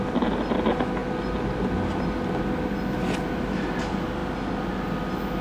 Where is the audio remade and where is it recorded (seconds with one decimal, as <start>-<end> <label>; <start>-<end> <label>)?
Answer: 0.0-5.4 recorded